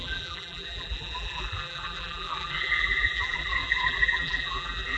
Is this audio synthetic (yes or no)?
yes